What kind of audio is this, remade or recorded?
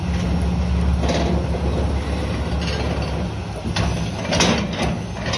recorded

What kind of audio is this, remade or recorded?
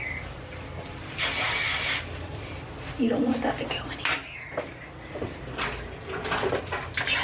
recorded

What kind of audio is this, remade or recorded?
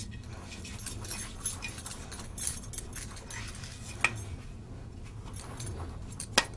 recorded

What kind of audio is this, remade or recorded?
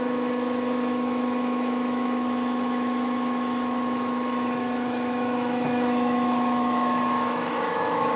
remade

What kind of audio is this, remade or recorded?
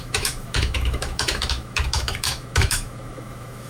remade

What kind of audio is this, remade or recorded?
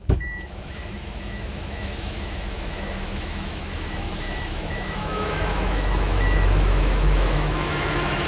remade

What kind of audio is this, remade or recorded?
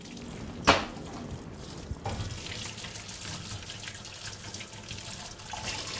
recorded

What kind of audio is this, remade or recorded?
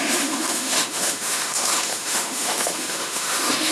remade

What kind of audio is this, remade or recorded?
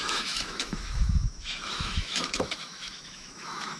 remade